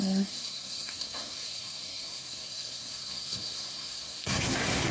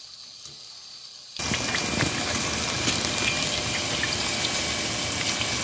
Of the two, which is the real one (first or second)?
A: second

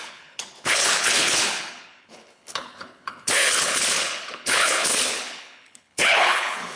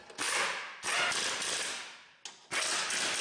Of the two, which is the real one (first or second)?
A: second